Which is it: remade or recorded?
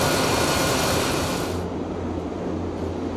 recorded